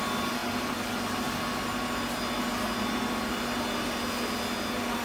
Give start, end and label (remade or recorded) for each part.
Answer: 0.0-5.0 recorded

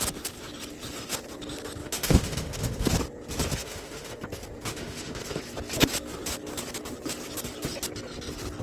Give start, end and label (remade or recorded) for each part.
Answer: 0.0-1.8 recorded; 1.8-2.9 remade; 2.9-3.5 recorded; 3.5-4.2 remade; 4.2-4.7 recorded; 4.7-5.4 remade; 5.4-8.6 recorded

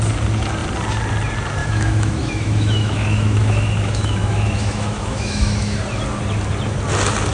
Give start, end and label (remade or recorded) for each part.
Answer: 0.0-1.6 recorded; 1.6-5.8 remade; 5.8-7.3 recorded

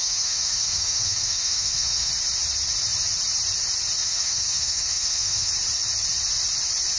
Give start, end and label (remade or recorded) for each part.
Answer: 0.0-2.1 remade; 2.1-4.0 recorded; 4.0-5.5 remade; 5.5-7.0 recorded

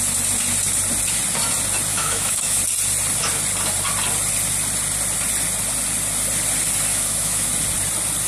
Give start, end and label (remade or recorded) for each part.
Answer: 0.0-1.9 recorded; 1.9-2.6 remade; 2.6-6.9 recorded; 6.9-7.5 remade; 7.5-8.3 recorded

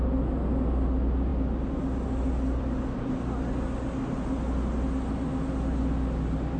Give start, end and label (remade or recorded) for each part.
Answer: 0.0-6.6 recorded